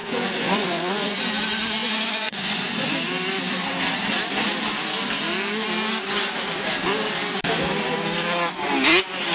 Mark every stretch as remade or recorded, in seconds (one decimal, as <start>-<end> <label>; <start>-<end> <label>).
0.0-1.3 remade; 1.3-1.8 recorded; 1.8-2.9 remade; 2.9-9.3 recorded